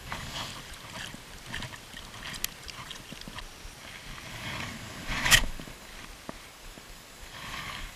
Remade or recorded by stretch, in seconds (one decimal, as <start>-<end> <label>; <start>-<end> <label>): 0.0-0.5 remade; 0.5-4.3 recorded; 4.3-5.9 remade; 5.9-6.5 recorded; 6.5-8.0 remade